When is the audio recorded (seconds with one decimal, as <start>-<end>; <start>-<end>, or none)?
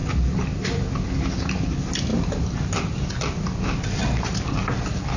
0.0-5.2